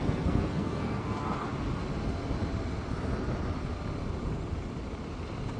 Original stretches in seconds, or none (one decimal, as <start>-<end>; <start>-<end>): 1.4-5.6